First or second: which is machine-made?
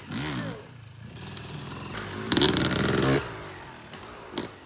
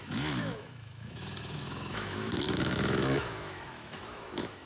second